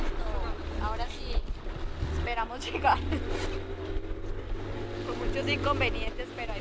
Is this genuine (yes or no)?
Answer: yes